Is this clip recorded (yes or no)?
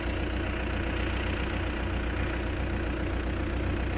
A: yes